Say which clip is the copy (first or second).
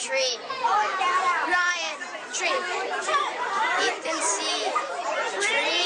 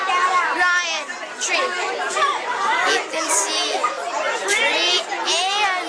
first